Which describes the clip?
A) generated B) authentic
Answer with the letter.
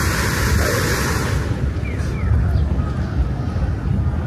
B